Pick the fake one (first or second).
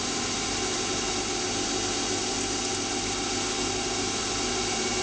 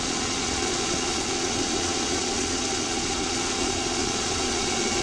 second